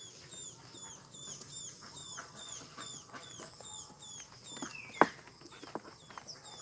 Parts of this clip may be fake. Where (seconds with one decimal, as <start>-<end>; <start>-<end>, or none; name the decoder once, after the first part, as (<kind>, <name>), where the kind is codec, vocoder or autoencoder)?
2.0-3.9 (vocoder, Vocos)